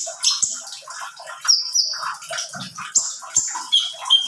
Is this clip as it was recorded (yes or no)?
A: yes